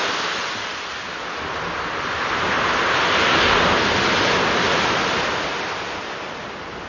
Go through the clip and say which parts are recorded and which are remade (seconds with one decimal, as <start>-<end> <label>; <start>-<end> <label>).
0.0-6.9 recorded